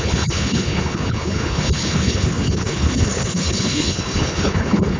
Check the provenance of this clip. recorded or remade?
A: remade